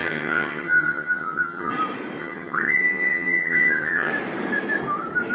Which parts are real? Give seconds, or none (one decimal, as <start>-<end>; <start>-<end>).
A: 1.7-2.2; 4.1-5.3